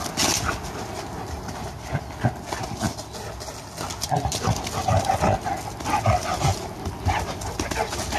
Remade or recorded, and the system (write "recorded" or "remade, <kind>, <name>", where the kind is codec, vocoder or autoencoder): recorded